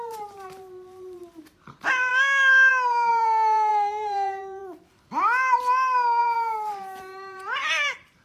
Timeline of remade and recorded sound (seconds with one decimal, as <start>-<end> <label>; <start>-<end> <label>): 0.0-2.1 remade; 2.1-2.7 recorded; 2.7-4.6 remade; 4.6-6.2 recorded; 6.2-8.2 remade